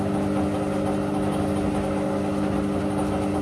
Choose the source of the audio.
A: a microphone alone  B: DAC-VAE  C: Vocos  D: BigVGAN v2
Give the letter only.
A